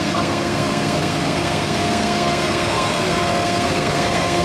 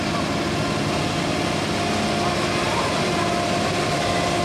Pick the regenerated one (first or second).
first